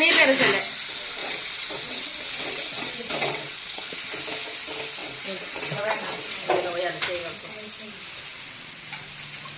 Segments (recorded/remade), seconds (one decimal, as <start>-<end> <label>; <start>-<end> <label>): 0.0-1.2 recorded; 1.2-4.0 remade; 4.0-5.0 recorded; 5.0-6.8 remade; 6.8-8.3 recorded; 8.3-8.9 remade; 8.9-9.6 recorded